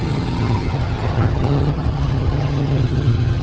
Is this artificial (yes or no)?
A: yes